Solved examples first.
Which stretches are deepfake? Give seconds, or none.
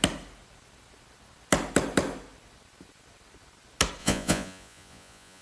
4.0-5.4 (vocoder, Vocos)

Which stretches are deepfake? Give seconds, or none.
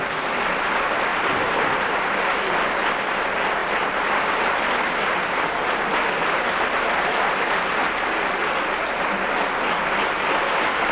1.1-2.0 (vocoder, BigVGAN v2); 3.6-8.2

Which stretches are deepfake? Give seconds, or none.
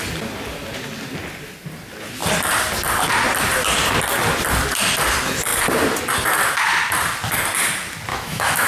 8.1-8.7 (autoencoder, DAC-VAE)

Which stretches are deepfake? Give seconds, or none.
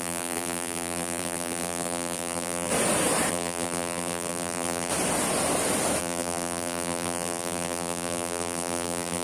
0.0-2.7 (vocoder, BigVGAN v2); 3.3-4.9; 6.0-9.2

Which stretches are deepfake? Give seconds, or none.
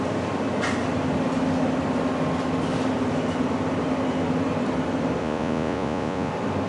5.2-6.3 (vocoder, Vocos)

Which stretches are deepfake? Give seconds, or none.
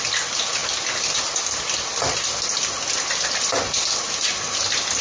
none